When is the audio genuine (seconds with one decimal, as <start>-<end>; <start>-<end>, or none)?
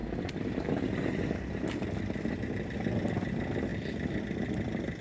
3.0-3.7; 4.2-5.0